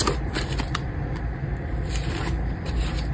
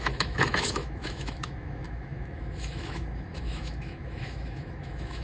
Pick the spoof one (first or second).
second